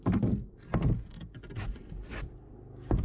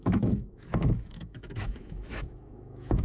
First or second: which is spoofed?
second